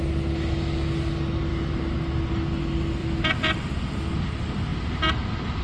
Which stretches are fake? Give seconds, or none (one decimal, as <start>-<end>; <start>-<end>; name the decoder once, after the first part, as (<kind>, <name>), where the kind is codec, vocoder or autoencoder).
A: 3.0-3.8 (vocoder, BigVGAN v2)